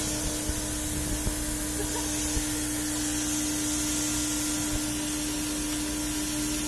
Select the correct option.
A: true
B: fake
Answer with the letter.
A